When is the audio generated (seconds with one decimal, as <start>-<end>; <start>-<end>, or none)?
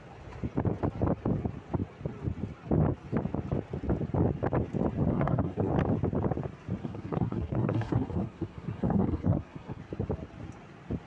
5.1-5.7; 6.8-9.8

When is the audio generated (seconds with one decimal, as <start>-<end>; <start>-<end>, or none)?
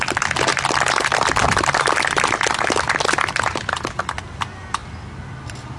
none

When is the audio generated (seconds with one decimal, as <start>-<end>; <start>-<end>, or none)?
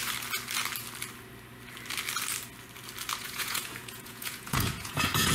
3.2-5.3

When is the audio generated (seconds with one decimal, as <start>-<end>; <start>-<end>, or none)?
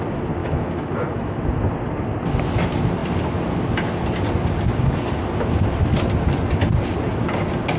0.4-1.4